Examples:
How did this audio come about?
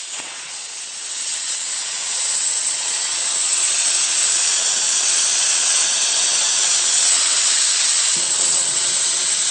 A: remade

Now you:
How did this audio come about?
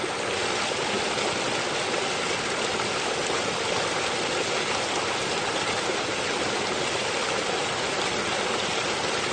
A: recorded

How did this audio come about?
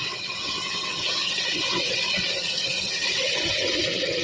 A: remade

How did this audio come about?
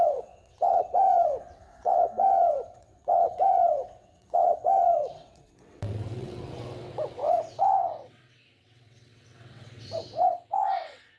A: remade